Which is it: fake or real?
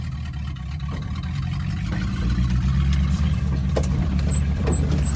fake